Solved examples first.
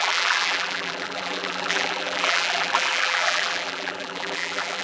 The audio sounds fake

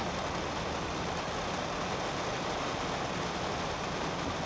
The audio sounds real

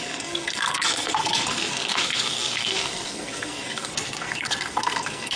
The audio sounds fake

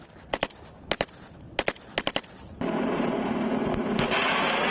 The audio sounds real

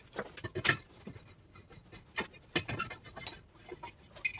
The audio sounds real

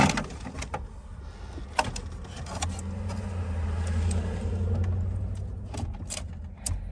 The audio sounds real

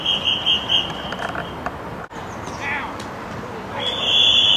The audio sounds real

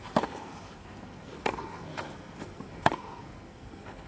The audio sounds fake